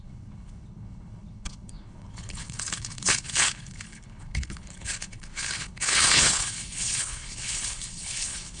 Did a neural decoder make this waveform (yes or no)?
yes